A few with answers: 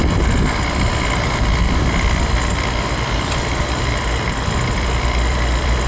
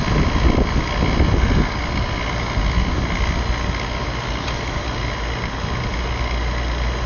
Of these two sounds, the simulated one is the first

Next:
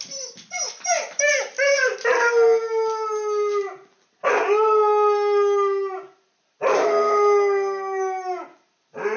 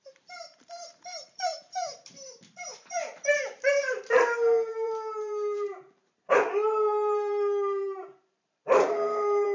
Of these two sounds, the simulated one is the second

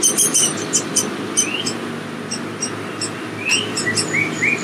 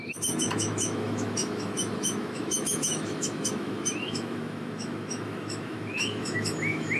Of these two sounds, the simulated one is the second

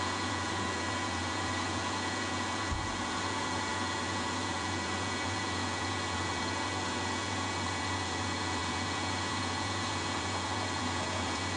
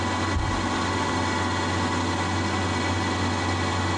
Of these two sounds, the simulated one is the first